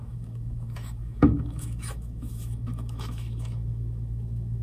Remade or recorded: remade